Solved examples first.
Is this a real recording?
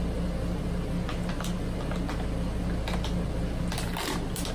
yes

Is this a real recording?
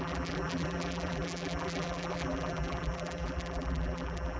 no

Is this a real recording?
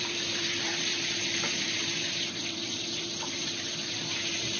no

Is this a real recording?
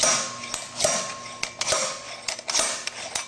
yes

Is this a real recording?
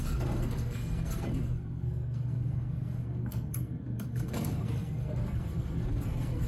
no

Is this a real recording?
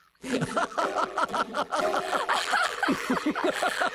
no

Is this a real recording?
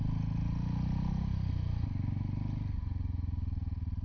yes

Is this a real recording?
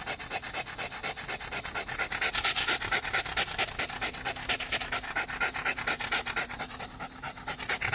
yes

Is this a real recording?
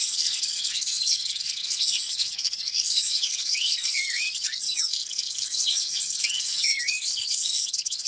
no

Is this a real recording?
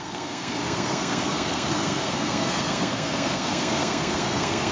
no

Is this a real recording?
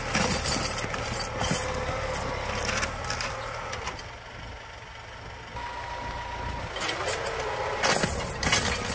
yes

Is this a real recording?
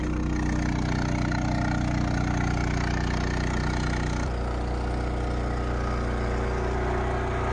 yes